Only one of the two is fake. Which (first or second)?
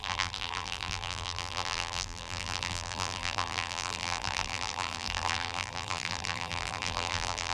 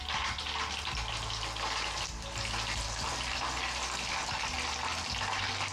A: first